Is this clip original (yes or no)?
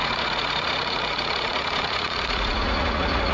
no